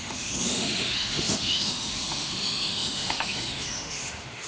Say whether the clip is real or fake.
fake